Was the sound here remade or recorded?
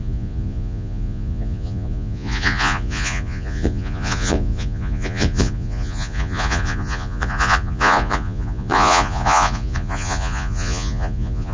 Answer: remade